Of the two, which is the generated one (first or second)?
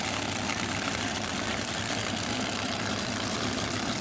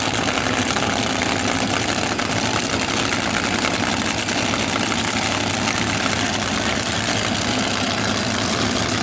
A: first